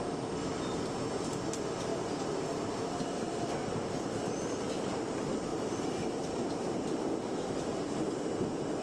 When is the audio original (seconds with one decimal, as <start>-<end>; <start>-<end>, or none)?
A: 0.0-1.9; 4.9-5.5; 7.1-8.8